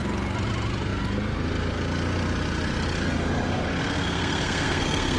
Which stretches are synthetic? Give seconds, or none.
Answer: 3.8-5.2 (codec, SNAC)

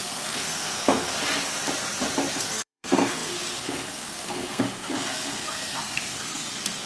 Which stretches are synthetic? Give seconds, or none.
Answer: 0.0-1.1 (codec, SNAC); 2.3-6.9

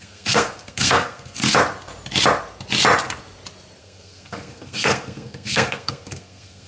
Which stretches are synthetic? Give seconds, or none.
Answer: 0.0-1.4 (codec, SNAC); 3.8-6.7

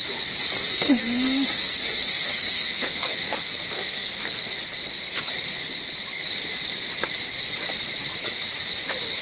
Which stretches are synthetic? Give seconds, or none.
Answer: 0.6-4.6 (codec, SNAC)

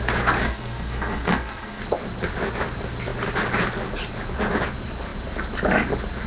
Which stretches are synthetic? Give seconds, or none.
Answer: 0.4-1.8 (codec, SNAC)

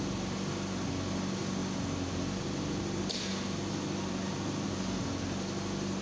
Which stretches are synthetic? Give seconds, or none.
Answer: none

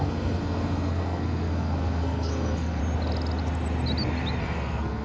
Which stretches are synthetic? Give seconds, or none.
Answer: 0.0-2.8 (codec, SNAC); 4.4-5.0